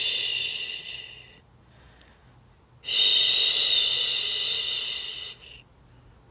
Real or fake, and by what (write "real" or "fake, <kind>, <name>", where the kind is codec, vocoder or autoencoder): real